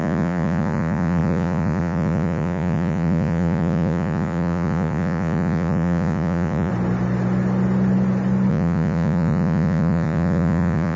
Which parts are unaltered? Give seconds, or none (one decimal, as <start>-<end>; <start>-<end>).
6.7-8.5